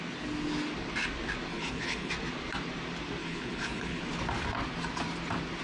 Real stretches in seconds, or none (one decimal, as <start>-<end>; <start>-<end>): 0.0-1.5; 2.1-3.2; 4.0-5.6